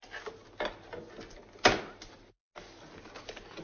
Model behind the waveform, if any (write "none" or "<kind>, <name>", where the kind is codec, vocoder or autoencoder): none